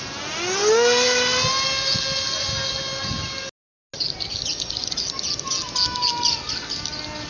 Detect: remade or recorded recorded